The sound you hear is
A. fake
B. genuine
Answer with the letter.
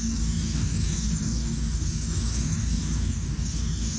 A